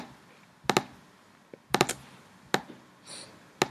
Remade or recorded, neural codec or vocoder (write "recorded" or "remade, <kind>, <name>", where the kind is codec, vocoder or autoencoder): recorded